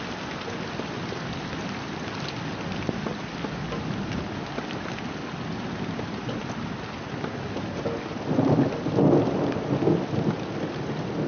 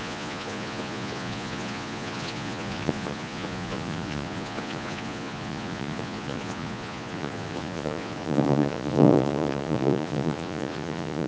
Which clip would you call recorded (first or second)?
first